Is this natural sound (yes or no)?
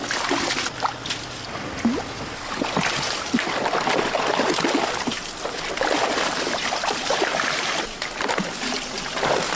yes